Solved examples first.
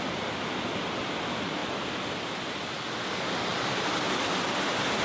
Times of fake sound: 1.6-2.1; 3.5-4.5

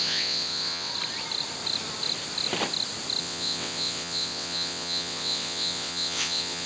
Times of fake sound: 0.0-0.9; 3.2-6.7

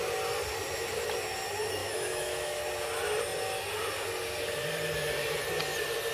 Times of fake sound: 1.8-2.6

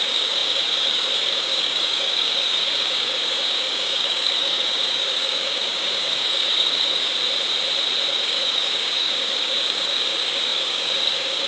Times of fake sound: 0.0-7.1; 8.1-11.5

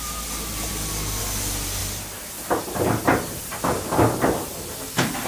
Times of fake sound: none

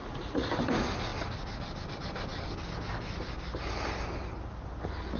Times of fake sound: 0.0-0.5

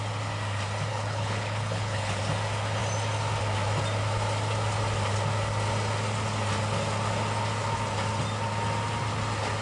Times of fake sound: 0.9-2.2

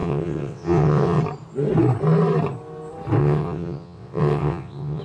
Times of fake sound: 0.0-1.2; 3.2-5.0